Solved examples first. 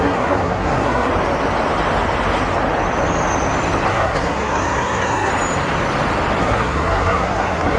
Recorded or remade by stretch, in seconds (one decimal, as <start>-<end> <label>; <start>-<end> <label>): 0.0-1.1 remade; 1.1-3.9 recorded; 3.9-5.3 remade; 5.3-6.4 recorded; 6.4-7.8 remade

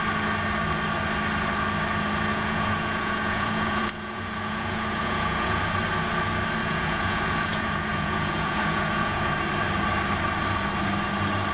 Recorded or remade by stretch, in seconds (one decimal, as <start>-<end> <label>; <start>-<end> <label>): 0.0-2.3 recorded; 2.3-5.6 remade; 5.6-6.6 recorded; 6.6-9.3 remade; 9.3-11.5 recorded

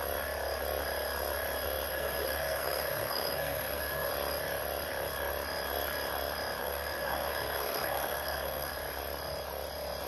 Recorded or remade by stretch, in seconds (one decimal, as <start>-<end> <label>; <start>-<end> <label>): 0.0-1.9 recorded; 1.9-4.1 remade; 4.1-6.6 recorded; 6.6-8.7 remade; 8.7-10.1 recorded